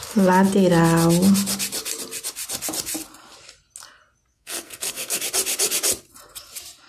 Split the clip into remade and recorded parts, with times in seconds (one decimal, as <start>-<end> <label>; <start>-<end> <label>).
0.0-4.3 recorded; 4.3-5.2 remade; 5.2-6.9 recorded